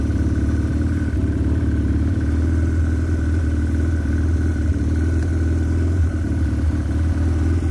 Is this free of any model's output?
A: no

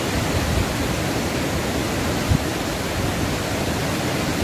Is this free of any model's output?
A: yes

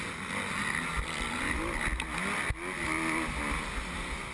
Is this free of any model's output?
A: yes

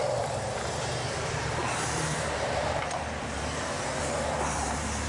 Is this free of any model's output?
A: no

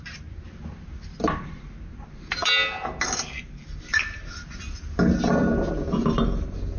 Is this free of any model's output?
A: yes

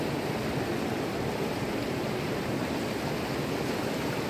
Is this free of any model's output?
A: no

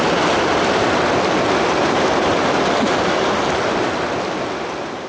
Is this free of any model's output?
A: yes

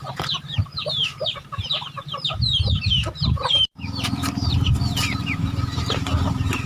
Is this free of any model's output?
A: no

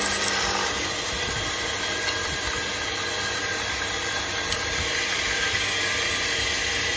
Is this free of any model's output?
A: yes